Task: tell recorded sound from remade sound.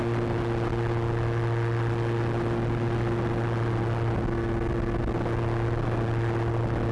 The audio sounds recorded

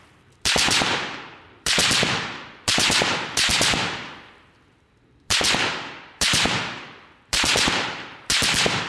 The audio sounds remade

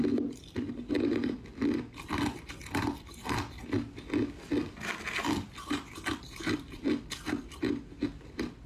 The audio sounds recorded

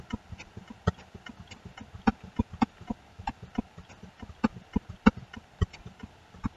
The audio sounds recorded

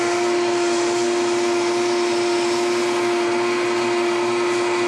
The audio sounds recorded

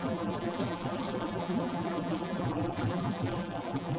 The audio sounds remade